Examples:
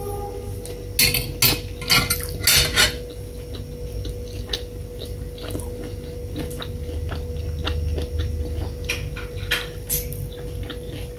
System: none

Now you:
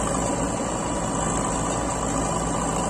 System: none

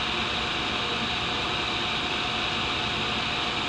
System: none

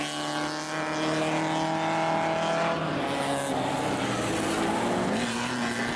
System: none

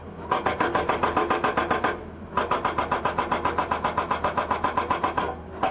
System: none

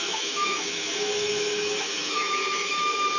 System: autoencoder, DAC-VAE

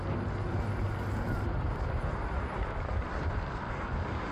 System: none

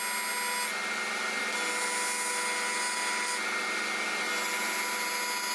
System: none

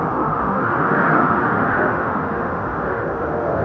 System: autoencoder, DAC-VAE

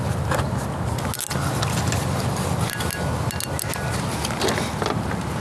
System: none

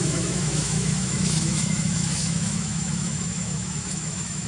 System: autoencoder, DAC-VAE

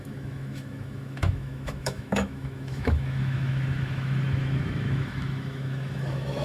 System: autoencoder, DAC-VAE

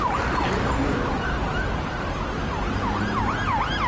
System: none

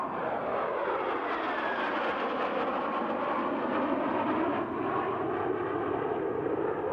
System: none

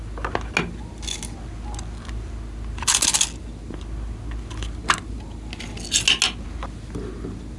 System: none